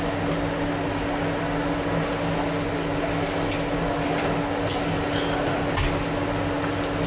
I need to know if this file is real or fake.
real